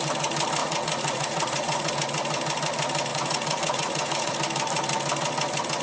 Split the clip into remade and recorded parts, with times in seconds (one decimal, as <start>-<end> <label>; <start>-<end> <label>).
0.0-0.6 recorded; 0.6-1.9 remade; 1.9-3.1 recorded; 3.1-4.3 remade; 4.3-5.8 recorded